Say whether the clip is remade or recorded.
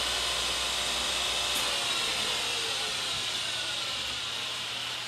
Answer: recorded